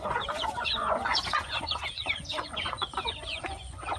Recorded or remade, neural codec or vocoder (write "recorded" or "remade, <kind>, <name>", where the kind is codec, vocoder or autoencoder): remade, vocoder, Vocos